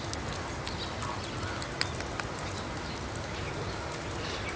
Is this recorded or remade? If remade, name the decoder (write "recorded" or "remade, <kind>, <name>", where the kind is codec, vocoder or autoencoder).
recorded